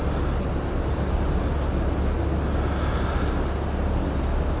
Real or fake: real